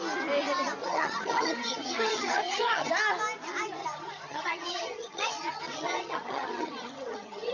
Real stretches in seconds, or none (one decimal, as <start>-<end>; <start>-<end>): 0.0-0.8; 2.9-3.8